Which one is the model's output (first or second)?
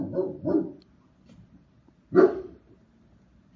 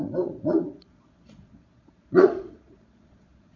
second